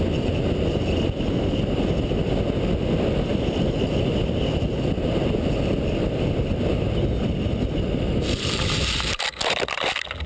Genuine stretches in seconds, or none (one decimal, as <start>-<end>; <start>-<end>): 0.0-10.3